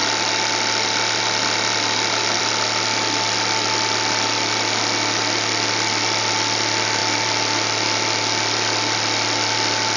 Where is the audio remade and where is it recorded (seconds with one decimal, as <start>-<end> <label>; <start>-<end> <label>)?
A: 0.0-10.0 recorded